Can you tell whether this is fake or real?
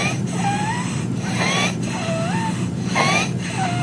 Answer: real